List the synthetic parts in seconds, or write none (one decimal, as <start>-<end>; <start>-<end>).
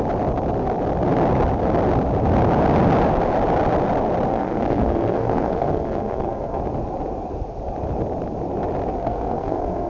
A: 4.3-6.6; 9.0-9.9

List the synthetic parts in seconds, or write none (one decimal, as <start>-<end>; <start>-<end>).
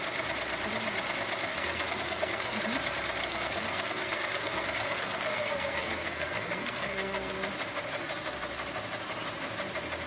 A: 1.5-2.6; 3.2-7.3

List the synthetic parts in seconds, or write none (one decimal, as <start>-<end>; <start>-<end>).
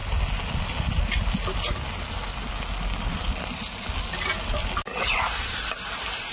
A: none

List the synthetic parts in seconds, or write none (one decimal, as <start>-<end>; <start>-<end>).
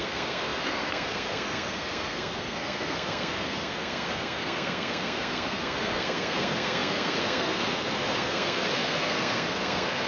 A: 0.0-10.1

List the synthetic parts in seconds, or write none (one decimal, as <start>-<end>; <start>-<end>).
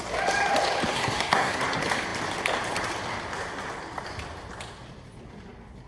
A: 0.9-1.6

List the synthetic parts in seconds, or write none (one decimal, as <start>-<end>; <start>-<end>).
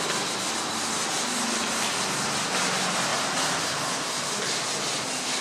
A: none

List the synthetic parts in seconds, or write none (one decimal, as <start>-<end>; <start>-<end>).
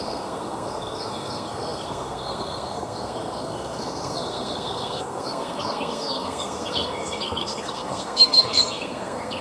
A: 0.0-9.4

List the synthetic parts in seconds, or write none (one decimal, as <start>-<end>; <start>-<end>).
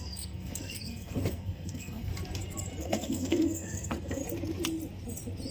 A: 0.0-2.1; 2.8-4.2